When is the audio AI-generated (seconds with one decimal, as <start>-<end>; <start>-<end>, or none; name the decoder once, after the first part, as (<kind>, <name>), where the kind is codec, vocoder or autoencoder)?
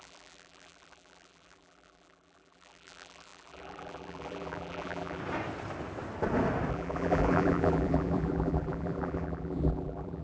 0.0-5.2 (vocoder, BigVGAN v2); 6.7-10.2